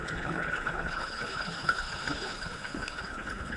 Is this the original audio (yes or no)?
no